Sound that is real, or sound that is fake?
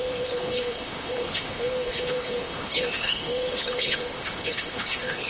fake